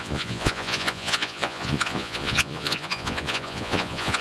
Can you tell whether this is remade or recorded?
remade